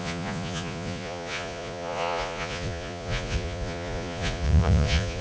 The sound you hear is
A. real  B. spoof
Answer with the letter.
B